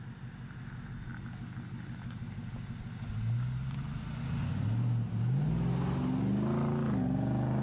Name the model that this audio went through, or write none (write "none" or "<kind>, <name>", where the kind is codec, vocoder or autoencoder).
none